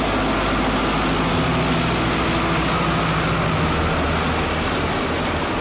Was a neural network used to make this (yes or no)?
no